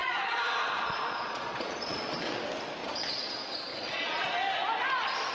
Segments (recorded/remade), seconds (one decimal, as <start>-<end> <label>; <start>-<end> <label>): 0.0-2.4 remade; 2.4-2.8 recorded; 2.8-3.3 remade; 3.3-3.7 recorded; 3.7-4.3 remade; 4.3-5.3 recorded